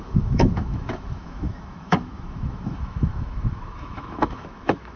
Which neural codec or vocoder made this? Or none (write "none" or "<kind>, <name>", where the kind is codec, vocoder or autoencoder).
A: autoencoder, DAC-VAE